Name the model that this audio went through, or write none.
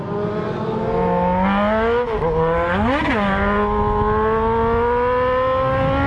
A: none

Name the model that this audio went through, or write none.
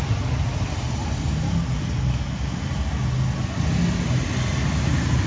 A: none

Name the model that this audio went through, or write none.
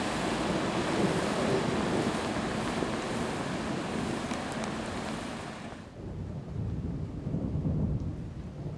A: none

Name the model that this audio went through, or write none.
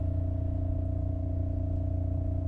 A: none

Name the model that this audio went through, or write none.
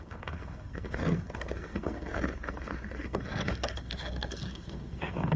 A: codec, SNAC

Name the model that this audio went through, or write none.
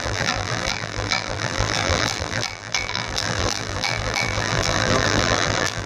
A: vocoder, BigVGAN v2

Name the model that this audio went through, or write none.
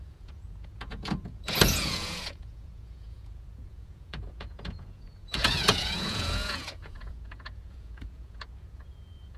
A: vocoder, Vocos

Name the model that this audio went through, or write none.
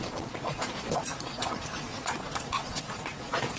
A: vocoder, Vocos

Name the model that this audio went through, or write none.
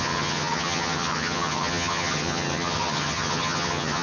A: vocoder, HiFi-GAN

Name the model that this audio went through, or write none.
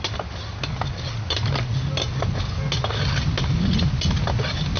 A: none